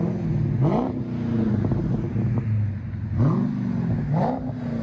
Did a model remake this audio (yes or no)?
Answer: no